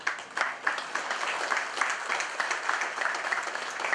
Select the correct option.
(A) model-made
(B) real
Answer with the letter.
B